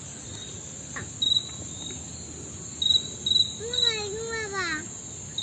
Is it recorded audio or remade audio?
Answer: recorded